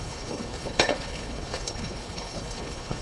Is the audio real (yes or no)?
no